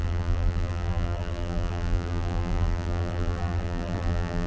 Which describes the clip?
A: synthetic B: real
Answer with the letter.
A